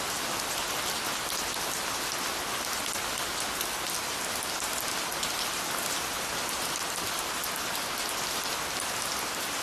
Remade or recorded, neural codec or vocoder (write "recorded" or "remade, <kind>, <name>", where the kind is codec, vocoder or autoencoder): recorded